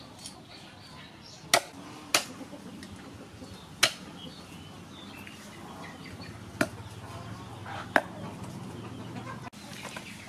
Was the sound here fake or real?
real